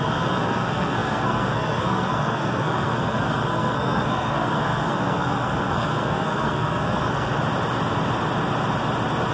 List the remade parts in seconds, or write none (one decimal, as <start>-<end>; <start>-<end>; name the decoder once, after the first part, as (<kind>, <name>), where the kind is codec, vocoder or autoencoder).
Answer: 0.0-7.3 (codec, SNAC)